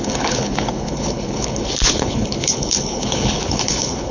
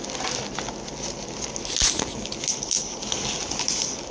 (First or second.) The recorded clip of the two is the second